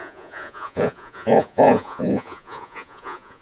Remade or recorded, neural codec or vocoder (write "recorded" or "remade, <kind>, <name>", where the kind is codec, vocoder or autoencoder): remade, vocoder, Vocos